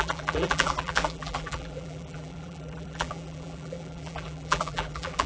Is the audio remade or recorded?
remade